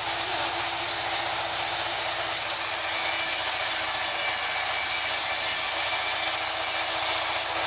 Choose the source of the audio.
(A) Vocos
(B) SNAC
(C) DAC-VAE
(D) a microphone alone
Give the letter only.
D